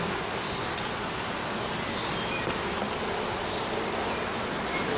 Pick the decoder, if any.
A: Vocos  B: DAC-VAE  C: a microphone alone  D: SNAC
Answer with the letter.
C